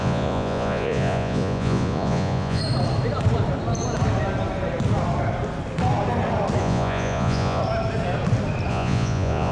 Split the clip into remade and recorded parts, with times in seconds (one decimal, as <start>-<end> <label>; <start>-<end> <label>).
0.0-2.6 remade; 2.6-6.6 recorded; 6.6-7.6 remade; 7.6-8.7 recorded; 8.7-9.5 remade

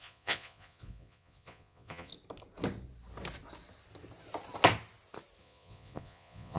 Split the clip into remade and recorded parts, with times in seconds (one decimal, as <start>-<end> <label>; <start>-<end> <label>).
0.0-2.1 remade; 2.1-5.4 recorded; 5.4-6.6 remade

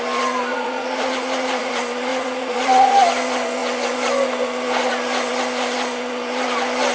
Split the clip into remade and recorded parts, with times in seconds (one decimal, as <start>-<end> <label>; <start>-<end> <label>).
0.0-0.5 recorded; 0.5-1.7 remade; 1.7-2.1 recorded; 2.1-2.9 remade; 2.9-6.9 recorded